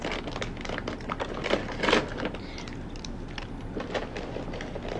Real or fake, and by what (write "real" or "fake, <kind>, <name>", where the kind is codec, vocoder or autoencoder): real